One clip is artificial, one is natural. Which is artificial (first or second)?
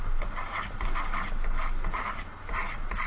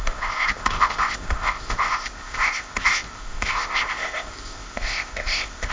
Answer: second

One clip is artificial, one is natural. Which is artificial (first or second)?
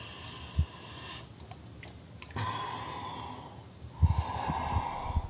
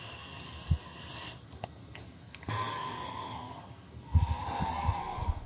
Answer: second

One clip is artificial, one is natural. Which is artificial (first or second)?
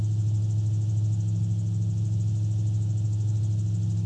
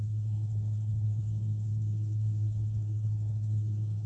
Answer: second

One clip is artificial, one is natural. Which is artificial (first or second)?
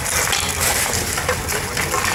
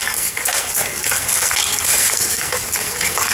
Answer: second